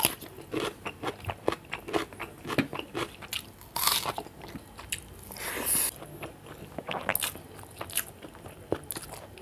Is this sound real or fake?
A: real